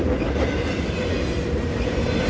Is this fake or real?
real